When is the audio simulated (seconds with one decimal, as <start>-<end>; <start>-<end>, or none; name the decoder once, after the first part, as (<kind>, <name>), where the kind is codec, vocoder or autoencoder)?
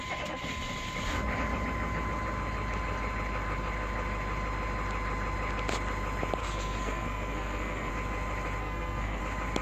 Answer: 6.4-7.9 (codec, SNAC); 8.6-9.2